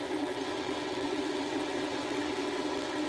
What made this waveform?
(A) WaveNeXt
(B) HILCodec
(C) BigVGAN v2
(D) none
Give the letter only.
A